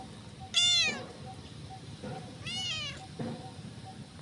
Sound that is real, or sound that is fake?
real